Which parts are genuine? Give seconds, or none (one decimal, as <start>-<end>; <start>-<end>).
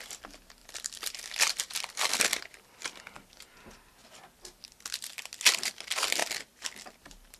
0.0-0.6; 3.0-7.4